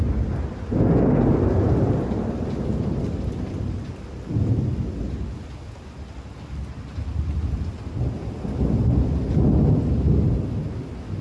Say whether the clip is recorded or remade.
recorded